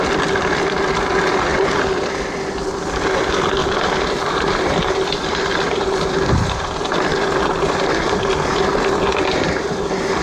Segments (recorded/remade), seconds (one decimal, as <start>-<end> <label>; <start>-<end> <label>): 0.0-1.5 recorded; 1.5-2.1 remade; 2.1-3.6 recorded; 3.6-7.7 remade; 7.7-10.2 recorded